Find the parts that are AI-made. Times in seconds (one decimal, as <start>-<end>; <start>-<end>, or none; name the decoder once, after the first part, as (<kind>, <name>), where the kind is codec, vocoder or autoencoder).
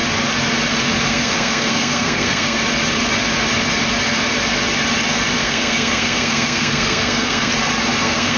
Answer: 1.0-2.6 (codec, SNAC); 5.4-7.5; 8.0-8.4